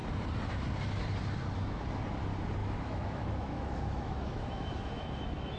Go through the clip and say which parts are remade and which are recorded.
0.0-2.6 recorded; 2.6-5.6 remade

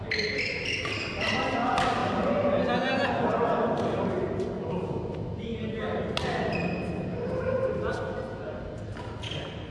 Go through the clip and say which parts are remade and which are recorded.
0.0-9.7 recorded

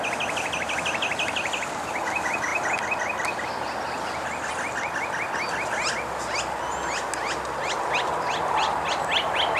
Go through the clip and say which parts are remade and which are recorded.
0.0-9.6 recorded

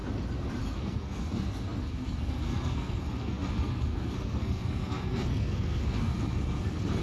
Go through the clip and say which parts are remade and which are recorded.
0.0-0.6 recorded; 0.6-7.0 remade